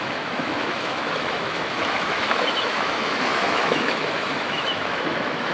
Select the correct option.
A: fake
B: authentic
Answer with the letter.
A